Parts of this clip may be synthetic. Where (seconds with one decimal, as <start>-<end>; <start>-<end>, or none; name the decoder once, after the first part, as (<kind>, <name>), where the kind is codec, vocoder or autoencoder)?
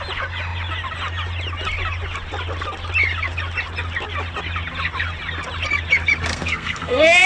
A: 6.3-7.3 (codec, SNAC)